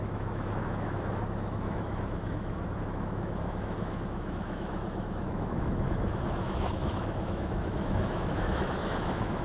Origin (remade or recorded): remade